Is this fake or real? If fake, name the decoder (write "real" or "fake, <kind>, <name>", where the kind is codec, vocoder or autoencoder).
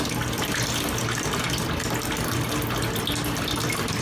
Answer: real